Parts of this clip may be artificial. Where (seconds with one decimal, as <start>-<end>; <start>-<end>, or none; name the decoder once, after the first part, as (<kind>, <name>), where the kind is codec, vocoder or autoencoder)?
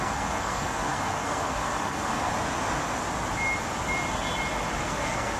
0.0-2.3 (codec, SNAC); 4.8-5.4